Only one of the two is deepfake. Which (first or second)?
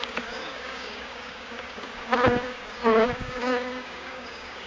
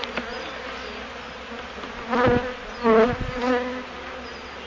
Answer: first